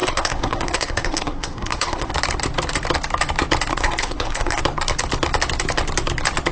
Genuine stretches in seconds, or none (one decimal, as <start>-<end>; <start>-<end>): 2.1-3.7; 4.6-6.5